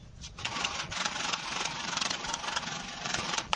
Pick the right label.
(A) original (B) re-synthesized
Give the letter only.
B